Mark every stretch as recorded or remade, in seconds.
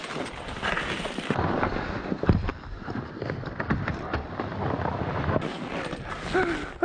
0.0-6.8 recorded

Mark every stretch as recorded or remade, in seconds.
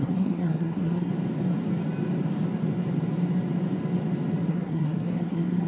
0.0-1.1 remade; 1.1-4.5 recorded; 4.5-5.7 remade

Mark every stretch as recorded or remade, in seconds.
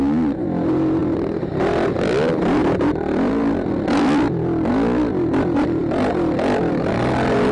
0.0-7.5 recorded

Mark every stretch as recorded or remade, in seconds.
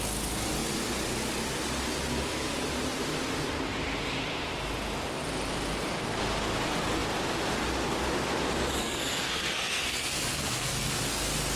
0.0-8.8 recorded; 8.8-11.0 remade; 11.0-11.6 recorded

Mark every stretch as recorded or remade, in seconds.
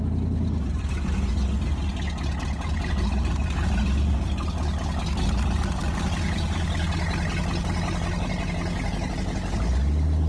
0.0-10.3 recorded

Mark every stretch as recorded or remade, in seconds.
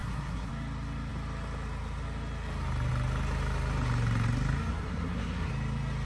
0.0-0.5 remade; 0.5-4.7 recorded; 4.7-5.5 remade; 5.5-6.1 recorded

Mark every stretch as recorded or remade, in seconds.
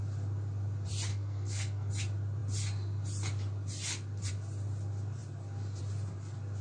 0.0-1.1 recorded; 1.1-1.9 remade; 1.9-6.6 recorded